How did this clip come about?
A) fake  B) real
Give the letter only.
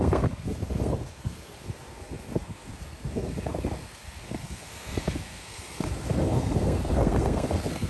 A